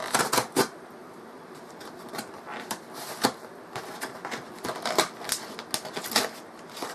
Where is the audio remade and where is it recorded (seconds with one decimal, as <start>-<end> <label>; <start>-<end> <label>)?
0.0-1.0 recorded; 1.0-5.1 remade; 5.1-6.9 recorded